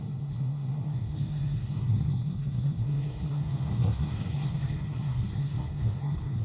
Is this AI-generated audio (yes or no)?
yes